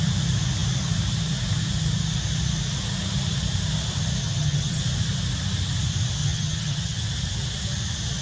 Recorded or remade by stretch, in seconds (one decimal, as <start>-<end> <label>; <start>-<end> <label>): 0.0-4.2 recorded; 4.2-4.8 remade; 4.8-6.2 recorded; 6.2-7.0 remade; 7.0-8.2 recorded